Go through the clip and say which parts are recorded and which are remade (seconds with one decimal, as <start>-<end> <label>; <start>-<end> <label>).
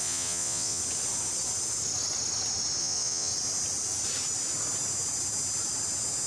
0.0-0.8 remade; 0.8-2.8 recorded; 2.8-3.3 remade; 3.3-6.3 recorded